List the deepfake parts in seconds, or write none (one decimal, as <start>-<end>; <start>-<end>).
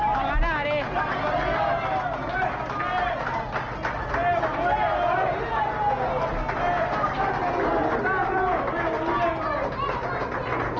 none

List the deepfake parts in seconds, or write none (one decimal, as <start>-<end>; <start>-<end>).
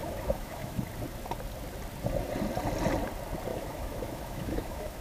0.0-0.8; 3.5-5.0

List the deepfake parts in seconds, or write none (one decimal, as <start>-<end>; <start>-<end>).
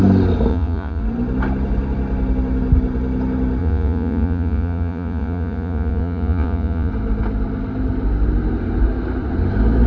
0.5-1.0; 3.6-6.9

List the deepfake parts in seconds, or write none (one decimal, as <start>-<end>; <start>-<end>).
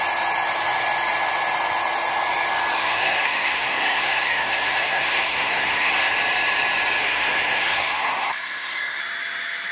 2.8-6.1; 7.0-9.0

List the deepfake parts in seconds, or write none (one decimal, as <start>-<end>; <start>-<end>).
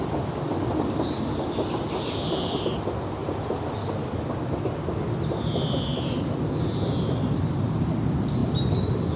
none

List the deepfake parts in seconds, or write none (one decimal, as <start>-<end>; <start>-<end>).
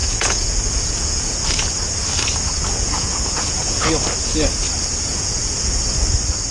0.0-1.7; 2.6-3.9; 5.1-5.8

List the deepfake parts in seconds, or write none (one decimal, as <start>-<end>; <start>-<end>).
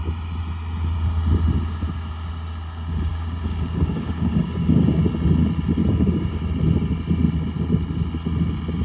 3.1-5.0; 5.8-6.4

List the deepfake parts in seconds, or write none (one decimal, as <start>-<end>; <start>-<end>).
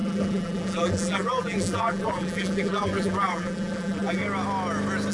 0.0-4.2